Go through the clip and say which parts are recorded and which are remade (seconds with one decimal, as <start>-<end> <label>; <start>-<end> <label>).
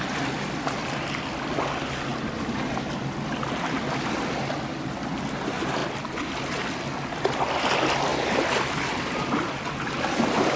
0.0-10.6 recorded